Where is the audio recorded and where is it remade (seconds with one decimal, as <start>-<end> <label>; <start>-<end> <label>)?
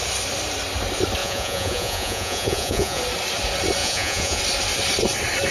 0.0-1.2 recorded; 1.2-3.0 remade; 3.0-3.8 recorded; 3.8-4.4 remade; 4.4-5.5 recorded